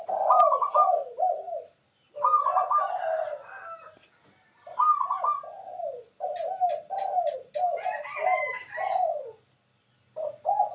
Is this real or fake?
real